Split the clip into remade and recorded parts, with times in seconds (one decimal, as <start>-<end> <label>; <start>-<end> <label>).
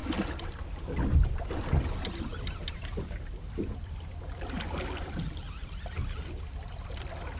0.0-7.4 recorded